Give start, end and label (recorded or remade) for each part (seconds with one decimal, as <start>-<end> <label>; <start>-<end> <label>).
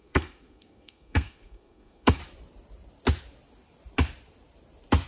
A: 0.0-2.2 remade; 2.2-5.1 recorded